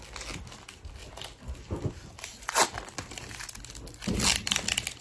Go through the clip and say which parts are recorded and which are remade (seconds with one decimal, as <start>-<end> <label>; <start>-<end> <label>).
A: 0.0-5.0 recorded